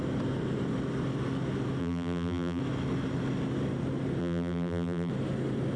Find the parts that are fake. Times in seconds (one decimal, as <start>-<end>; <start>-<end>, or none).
1.8-2.6; 4.2-5.1